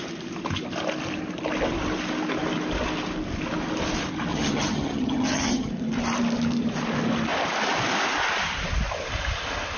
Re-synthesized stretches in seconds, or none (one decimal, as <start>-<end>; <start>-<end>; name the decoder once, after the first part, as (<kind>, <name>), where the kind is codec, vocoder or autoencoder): 4.3-5.7 (vocoder, HiFi-GAN)